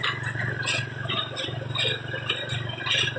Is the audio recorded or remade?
recorded